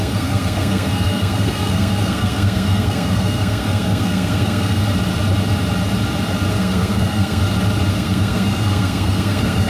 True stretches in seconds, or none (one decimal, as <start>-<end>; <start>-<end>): 4.8-6.5; 7.4-7.9